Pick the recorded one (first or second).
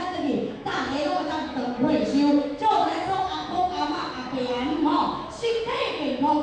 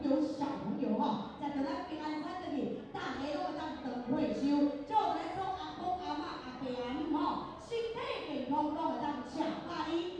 second